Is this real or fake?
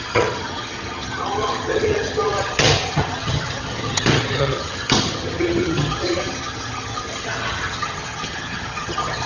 fake